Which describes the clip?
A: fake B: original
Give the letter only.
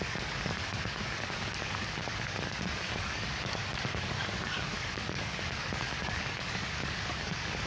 A